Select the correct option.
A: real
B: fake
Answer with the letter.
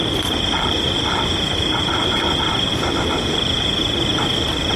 B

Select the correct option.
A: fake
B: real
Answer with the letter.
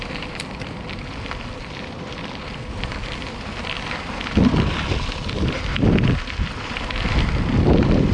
A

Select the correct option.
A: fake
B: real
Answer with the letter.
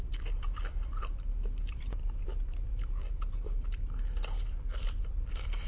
A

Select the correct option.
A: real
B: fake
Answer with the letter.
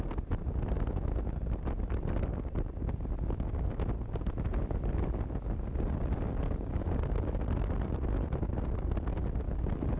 A